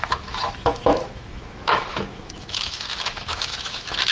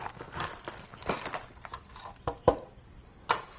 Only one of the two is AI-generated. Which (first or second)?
first